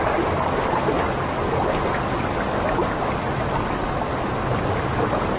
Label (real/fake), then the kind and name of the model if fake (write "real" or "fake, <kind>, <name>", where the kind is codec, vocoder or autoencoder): real